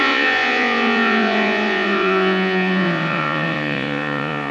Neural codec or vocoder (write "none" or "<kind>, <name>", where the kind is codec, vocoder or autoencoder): vocoder, Vocos